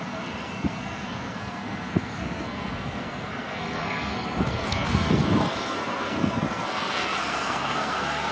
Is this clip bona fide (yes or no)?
no